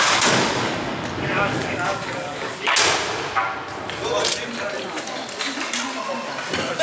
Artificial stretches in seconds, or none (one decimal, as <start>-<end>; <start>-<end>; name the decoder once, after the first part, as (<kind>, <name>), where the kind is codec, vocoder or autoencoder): 0.0-2.7 (codec, DAC)